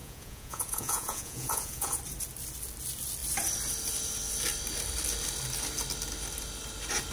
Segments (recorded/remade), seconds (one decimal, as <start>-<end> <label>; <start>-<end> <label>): 0.0-2.0 remade; 2.0-7.1 recorded